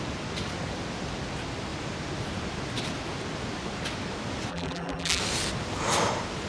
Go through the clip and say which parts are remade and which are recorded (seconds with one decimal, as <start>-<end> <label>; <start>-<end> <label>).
0.0-4.5 recorded; 4.5-5.2 remade; 5.2-6.5 recorded